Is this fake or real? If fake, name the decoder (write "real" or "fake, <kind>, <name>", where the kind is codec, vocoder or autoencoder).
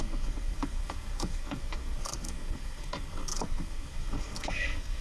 fake, codec, SNAC